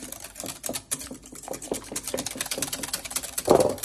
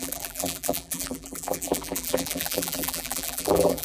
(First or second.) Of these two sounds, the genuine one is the first